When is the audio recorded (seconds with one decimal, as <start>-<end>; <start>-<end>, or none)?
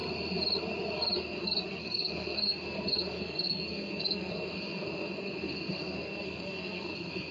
0.0-1.2